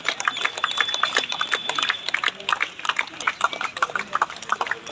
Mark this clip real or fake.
real